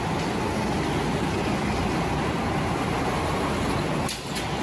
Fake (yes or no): no